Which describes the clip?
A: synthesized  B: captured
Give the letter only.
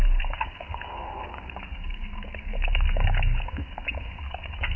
A